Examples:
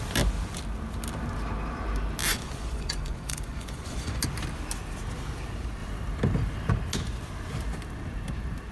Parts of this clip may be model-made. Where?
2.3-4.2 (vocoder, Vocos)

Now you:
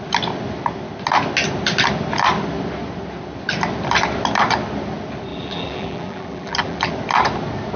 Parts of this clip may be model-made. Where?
5.3-6.9 (vocoder, BigVGAN v2)

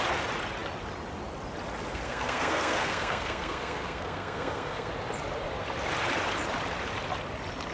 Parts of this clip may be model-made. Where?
1.9-4.9 (codec, SNAC)

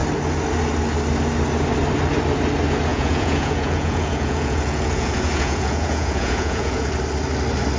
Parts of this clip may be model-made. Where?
2.9-6.9 (vocoder, Vocos)

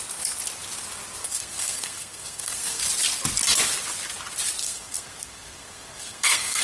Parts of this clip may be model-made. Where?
1.2-2.8 (codec, SNAC); 4.6-6.6

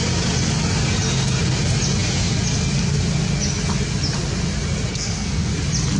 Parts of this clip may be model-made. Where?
4.9-5.5 (codec, SNAC)

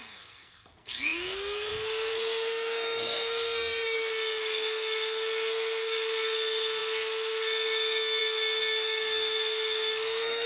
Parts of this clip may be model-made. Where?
0.0-10.5 (codec, SNAC)

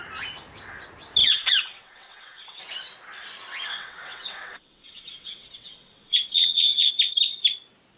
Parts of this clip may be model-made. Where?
1.2-2.6 (vocoder, WaveNeXt); 3.7-6.9